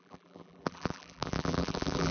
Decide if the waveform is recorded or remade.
remade